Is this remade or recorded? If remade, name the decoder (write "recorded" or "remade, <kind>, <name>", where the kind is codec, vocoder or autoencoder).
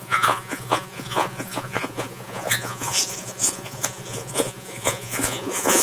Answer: remade, vocoder, Vocos